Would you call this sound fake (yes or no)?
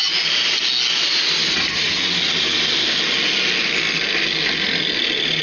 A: no